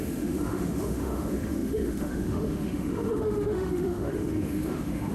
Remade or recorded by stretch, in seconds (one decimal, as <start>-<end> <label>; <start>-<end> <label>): 0.0-5.1 remade